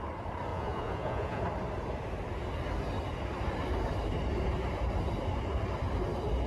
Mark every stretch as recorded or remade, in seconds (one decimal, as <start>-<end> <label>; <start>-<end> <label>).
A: 0.0-0.5 recorded; 0.5-1.4 remade; 1.4-6.5 recorded